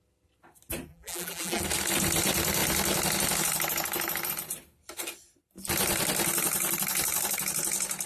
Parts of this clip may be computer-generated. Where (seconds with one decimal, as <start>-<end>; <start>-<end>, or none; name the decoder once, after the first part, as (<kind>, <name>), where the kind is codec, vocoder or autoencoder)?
0.9-1.6 (vocoder, BigVGAN v2)